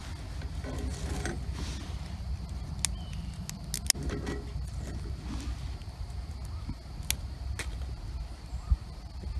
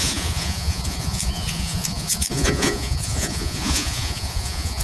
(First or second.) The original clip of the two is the first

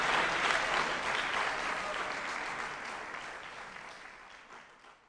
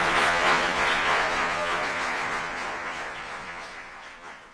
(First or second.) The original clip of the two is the first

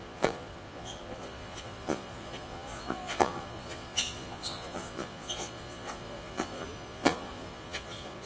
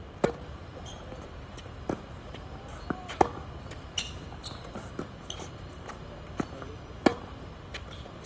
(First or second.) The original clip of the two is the second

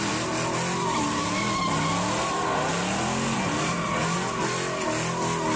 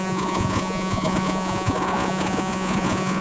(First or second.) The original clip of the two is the first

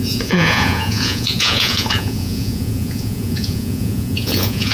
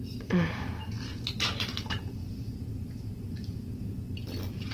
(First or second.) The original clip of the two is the second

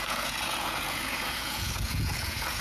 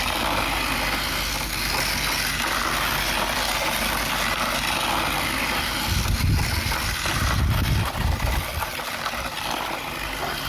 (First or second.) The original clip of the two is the second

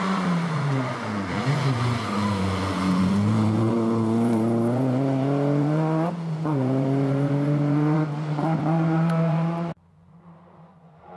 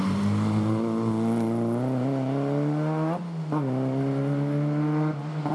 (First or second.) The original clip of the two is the second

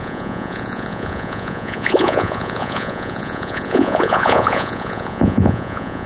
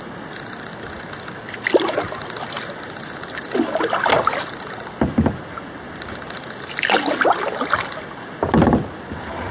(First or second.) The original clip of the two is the second